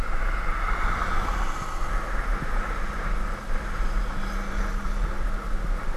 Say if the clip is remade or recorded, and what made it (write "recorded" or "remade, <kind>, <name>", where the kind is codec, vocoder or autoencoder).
recorded